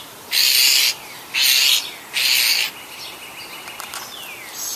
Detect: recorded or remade recorded